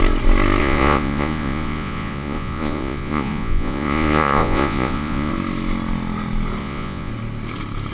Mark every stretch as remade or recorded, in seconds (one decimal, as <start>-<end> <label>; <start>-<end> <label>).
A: 0.0-0.6 recorded; 0.6-5.3 remade; 5.3-6.6 recorded; 6.6-7.1 remade; 7.1-7.9 recorded